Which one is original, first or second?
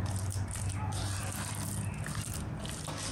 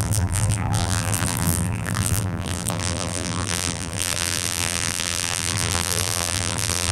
first